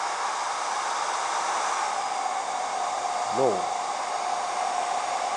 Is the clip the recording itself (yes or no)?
yes